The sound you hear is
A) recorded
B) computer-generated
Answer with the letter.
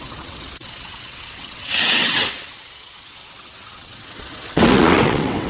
B